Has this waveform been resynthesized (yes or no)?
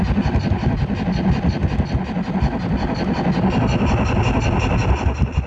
no